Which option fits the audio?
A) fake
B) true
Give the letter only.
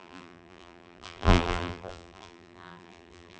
A